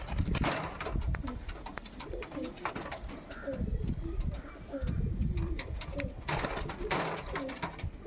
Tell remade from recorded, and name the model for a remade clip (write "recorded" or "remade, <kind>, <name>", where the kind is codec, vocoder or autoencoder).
recorded